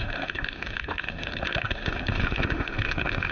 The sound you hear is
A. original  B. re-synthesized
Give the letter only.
B